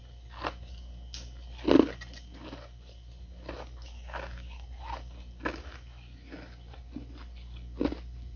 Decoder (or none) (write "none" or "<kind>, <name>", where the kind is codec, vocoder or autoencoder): none